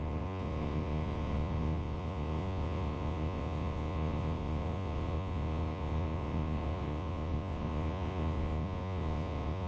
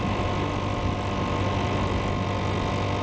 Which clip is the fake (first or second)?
first